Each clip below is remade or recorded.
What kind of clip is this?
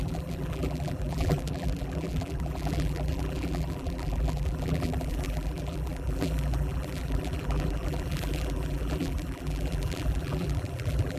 remade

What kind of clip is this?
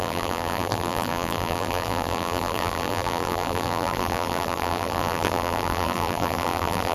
remade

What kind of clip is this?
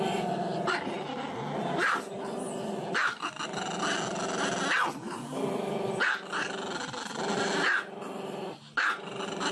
recorded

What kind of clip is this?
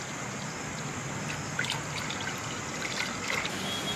recorded